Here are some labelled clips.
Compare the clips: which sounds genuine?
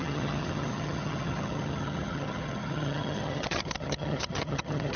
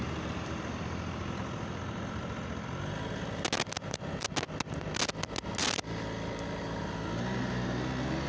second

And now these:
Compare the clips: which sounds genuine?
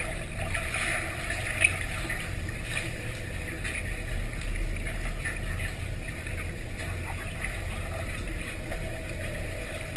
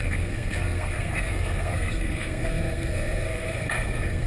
first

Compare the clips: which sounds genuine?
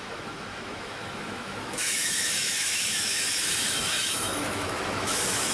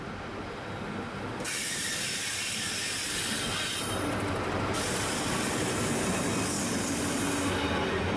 second